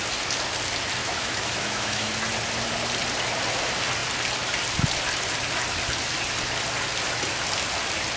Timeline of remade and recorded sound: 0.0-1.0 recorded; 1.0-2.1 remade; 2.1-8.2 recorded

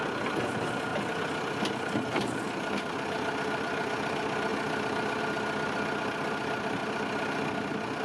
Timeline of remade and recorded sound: 0.0-8.0 recorded

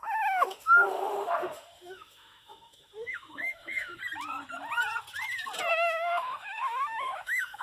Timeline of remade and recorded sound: 0.0-4.0 remade; 4.0-5.7 recorded; 5.7-7.6 remade

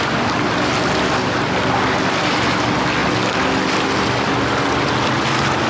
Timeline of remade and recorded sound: 0.0-5.7 recorded

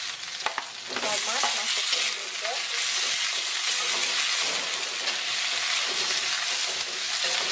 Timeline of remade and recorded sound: 0.0-6.6 recorded; 6.6-7.1 remade; 7.1-7.5 recorded